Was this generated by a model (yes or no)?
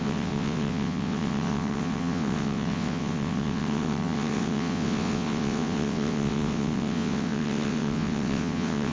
yes